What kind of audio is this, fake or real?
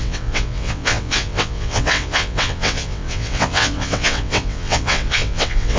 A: fake